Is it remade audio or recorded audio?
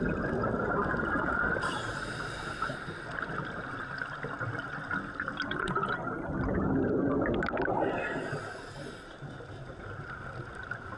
recorded